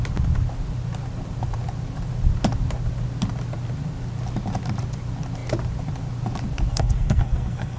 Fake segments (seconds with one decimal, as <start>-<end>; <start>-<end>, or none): 6.7-7.8